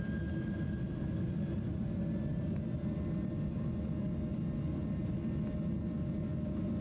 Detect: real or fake real